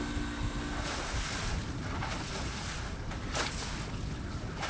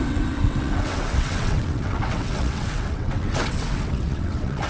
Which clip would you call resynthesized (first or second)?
second